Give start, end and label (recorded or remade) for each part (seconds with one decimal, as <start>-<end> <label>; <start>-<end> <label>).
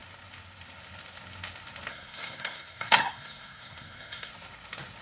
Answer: 0.0-1.9 recorded; 1.9-4.3 remade; 4.3-5.0 recorded